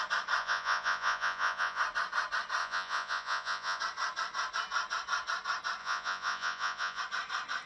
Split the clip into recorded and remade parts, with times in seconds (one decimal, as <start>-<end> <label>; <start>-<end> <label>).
0.0-0.4 recorded; 0.4-1.8 remade; 1.8-2.6 recorded; 2.6-3.8 remade; 3.8-5.8 recorded; 5.8-7.0 remade; 7.0-7.7 recorded